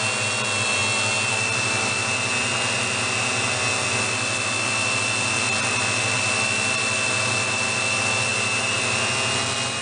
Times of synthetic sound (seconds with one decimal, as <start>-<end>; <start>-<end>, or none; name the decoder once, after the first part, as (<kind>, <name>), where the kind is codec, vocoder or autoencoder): none